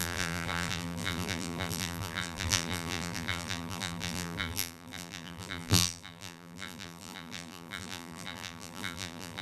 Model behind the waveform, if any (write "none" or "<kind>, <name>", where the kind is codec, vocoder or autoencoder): vocoder, BigVGAN v2